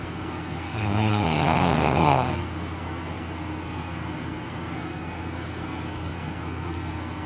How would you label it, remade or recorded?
remade